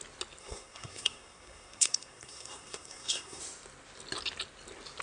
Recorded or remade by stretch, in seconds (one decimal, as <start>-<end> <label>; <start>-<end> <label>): 0.0-0.4 recorded; 0.4-3.4 remade; 3.4-5.0 recorded